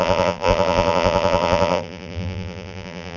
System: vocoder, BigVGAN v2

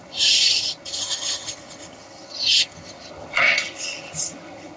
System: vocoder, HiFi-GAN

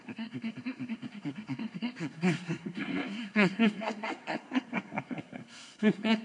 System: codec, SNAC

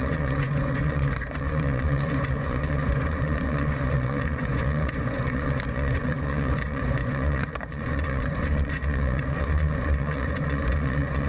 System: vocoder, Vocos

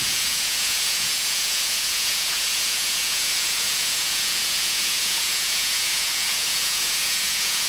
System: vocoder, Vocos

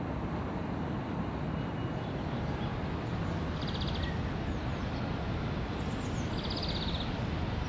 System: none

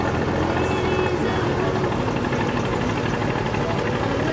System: none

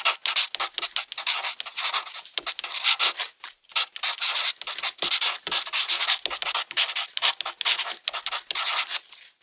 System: none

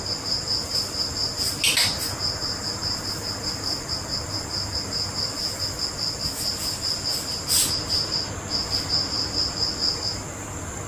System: none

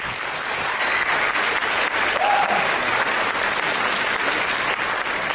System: none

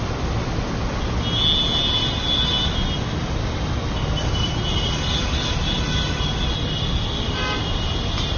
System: none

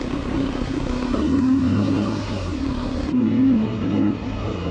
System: codec, SNAC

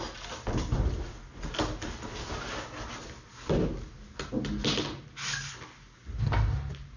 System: none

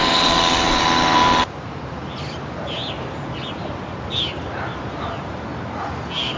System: none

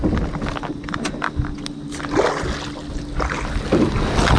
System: none